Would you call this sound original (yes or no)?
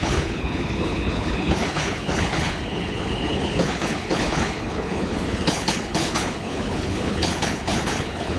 no